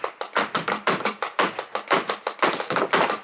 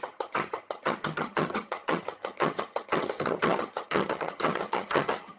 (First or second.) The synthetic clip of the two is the second